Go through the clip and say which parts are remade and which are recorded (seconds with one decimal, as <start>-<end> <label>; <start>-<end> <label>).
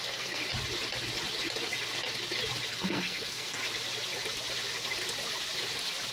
0.0-0.4 remade; 0.4-2.7 recorded; 2.7-3.6 remade; 3.6-6.1 recorded